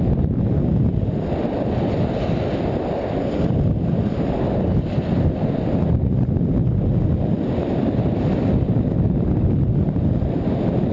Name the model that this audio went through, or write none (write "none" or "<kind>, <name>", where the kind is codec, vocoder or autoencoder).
none